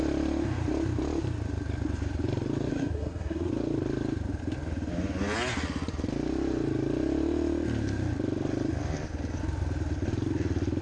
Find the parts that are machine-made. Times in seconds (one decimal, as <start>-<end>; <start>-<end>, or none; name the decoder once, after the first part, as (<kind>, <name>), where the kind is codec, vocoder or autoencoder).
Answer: 2.7-3.5 (codec, SNAC)